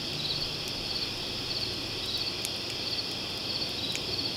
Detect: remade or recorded recorded